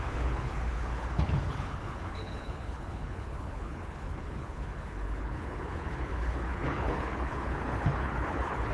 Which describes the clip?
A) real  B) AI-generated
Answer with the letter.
B